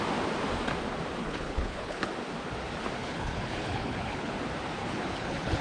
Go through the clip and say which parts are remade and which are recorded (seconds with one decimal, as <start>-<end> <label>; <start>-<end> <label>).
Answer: 0.0-1.2 recorded; 1.2-2.1 remade; 2.1-3.0 recorded; 3.0-4.3 remade; 4.3-4.8 recorded; 4.8-5.6 remade